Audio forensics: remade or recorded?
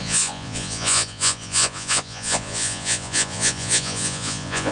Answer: remade